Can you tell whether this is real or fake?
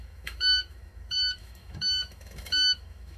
fake